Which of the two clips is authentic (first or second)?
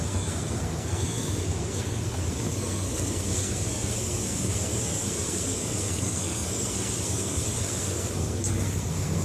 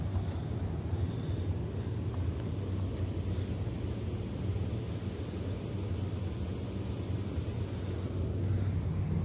second